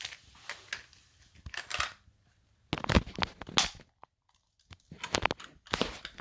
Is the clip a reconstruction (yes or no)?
no